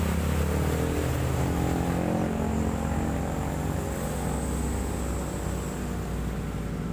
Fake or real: real